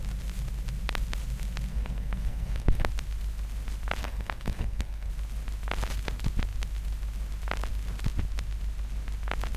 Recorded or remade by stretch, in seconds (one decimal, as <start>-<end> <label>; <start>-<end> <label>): 0.0-1.7 recorded; 1.7-2.9 remade; 2.9-4.0 recorded; 4.0-5.1 remade; 5.1-9.6 recorded

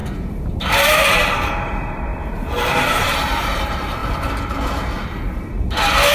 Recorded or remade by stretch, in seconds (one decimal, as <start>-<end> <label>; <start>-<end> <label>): 0.0-4.0 remade; 4.0-6.1 recorded